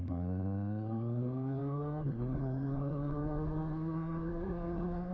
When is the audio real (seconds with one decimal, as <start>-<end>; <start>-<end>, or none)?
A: none